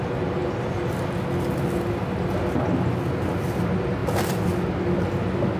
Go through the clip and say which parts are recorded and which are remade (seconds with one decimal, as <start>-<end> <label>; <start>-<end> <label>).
0.0-5.6 recorded